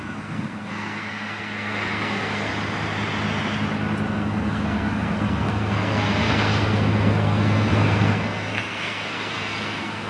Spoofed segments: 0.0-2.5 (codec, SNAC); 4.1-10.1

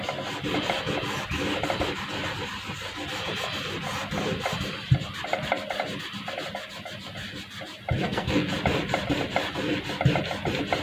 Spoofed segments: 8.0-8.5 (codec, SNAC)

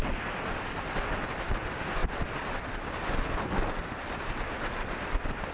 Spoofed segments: none

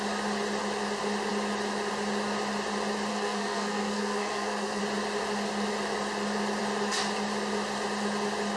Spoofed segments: 3.1-4.8 (codec, SNAC)